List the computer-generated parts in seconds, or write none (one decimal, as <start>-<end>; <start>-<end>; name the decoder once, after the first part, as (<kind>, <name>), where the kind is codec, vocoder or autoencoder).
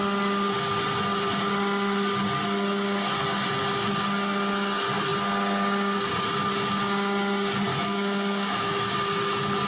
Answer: 7.7-8.9 (autoencoder, DAC-VAE)